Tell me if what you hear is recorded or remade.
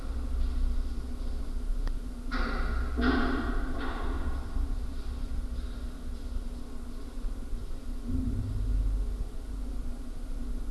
recorded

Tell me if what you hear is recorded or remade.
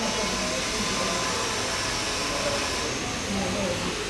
recorded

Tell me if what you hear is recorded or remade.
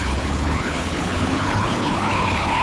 remade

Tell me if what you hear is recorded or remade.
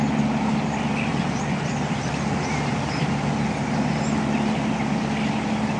recorded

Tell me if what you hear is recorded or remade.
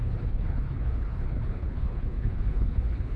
remade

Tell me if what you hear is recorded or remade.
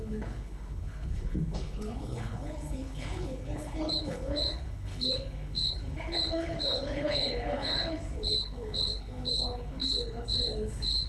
remade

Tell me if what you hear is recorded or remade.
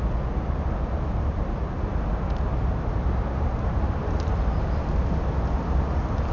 recorded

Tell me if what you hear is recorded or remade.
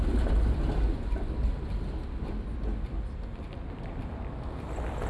recorded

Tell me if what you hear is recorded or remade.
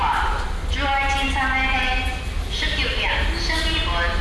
recorded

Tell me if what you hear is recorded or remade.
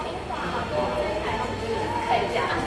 recorded